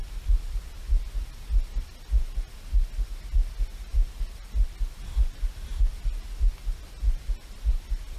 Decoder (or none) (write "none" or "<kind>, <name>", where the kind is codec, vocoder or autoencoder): none